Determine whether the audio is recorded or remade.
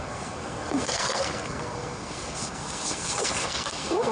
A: remade